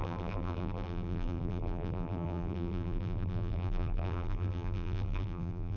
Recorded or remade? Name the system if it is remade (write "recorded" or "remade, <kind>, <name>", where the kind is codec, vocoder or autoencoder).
remade, vocoder, BigVGAN v2